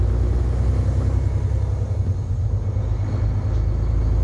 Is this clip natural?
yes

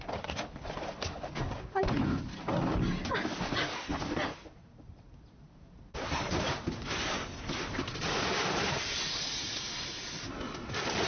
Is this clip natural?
yes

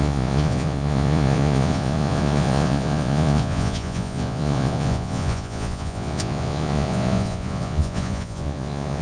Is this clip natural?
no